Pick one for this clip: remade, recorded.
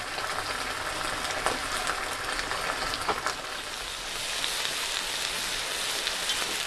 recorded